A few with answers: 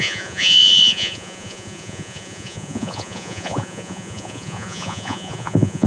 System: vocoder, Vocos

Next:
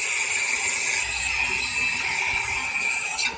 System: none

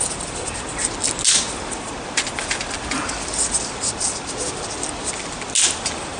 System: none